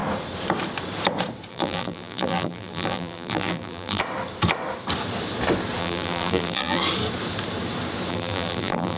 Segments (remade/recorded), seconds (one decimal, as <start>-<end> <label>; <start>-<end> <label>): 0.0-1.5 recorded; 1.5-4.0 remade; 4.0-5.8 recorded; 5.8-6.8 remade; 6.8-8.1 recorded; 8.1-9.0 remade